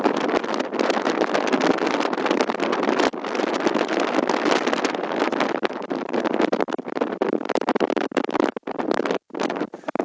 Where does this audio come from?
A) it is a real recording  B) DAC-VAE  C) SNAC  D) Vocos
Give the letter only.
A